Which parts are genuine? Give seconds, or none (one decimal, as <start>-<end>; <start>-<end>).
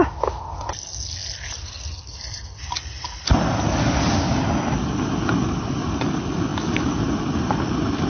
0.0-8.1